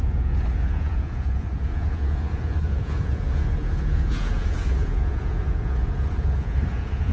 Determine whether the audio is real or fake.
fake